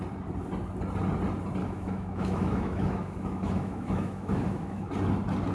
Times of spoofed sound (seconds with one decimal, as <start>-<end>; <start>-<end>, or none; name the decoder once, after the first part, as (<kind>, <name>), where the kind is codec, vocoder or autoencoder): 1.6-4.9 (autoencoder, DAC-VAE)